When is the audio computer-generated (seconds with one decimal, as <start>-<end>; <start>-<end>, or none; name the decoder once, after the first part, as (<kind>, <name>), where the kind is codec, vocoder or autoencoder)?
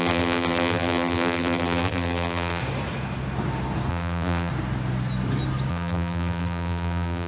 0.0-2.6 (vocoder, BigVGAN v2); 3.9-4.5; 5.7-7.3